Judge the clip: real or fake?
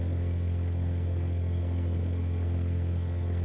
fake